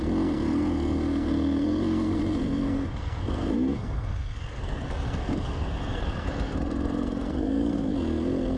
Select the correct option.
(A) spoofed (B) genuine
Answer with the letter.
A